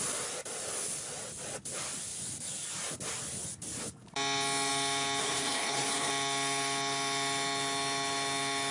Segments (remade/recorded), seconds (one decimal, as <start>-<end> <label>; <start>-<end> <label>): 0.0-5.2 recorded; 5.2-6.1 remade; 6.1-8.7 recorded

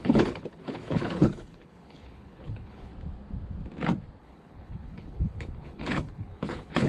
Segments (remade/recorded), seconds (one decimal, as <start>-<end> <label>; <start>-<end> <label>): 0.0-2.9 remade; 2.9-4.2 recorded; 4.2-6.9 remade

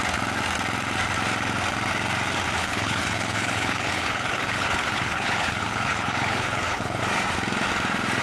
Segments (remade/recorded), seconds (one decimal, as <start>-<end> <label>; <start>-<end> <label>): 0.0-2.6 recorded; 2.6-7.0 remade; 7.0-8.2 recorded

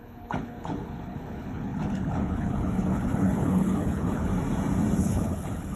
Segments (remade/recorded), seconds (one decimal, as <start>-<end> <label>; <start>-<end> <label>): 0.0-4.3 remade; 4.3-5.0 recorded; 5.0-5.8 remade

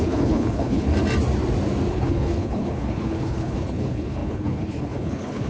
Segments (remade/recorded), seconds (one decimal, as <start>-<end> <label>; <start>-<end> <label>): 0.0-0.9 remade; 0.9-1.9 recorded; 1.9-5.5 remade